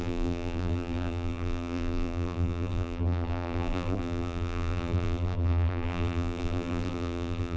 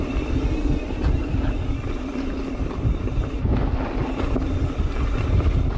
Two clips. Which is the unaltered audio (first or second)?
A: second